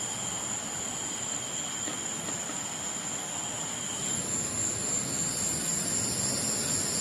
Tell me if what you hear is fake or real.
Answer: real